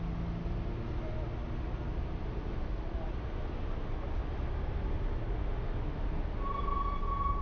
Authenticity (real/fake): real